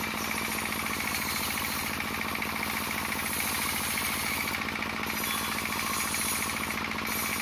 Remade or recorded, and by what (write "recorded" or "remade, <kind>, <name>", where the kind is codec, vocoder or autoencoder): recorded